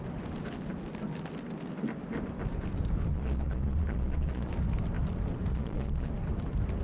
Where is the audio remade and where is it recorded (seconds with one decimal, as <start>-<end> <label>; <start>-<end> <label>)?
0.0-3.1 recorded; 3.1-4.5 remade; 4.5-5.5 recorded; 5.5-6.1 remade; 6.1-6.8 recorded